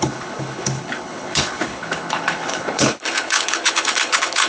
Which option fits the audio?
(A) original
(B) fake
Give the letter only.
B